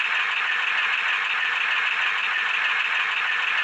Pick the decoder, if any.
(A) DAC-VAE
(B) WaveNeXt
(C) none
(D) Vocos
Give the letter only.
C